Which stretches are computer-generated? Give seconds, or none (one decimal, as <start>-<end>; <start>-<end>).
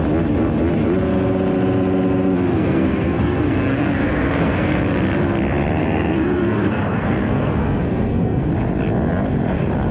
2.5-4.8; 5.8-8.5